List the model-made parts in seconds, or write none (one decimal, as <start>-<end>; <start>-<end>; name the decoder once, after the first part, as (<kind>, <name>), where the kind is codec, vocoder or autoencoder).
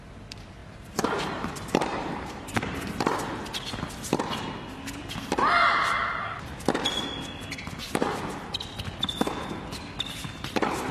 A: 0.6-2.9 (vocoder, BigVGAN v2)